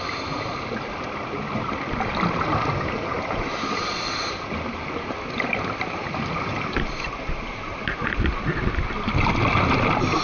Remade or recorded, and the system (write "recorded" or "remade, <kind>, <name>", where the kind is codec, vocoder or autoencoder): recorded